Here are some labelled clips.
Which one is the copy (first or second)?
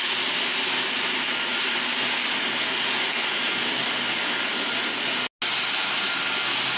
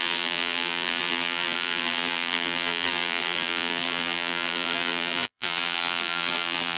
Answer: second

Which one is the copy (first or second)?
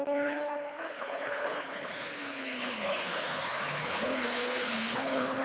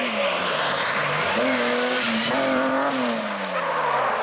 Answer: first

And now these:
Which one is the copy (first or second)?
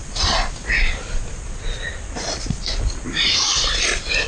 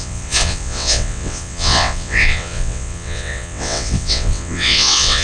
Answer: second